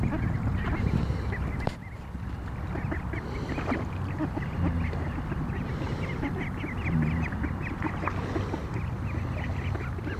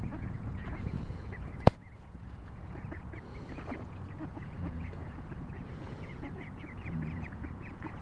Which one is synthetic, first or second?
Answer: second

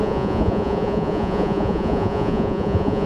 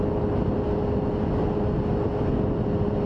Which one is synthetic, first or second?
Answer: first